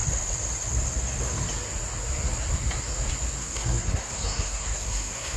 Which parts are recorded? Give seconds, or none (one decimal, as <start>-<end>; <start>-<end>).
0.0-3.4